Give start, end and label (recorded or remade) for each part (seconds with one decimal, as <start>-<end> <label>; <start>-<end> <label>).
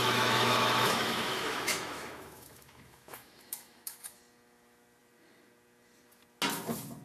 0.0-4.2 remade; 4.2-7.0 recorded